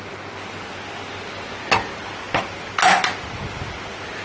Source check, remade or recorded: recorded